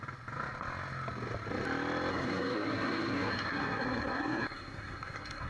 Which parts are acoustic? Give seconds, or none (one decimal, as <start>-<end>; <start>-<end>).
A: 0.0-2.1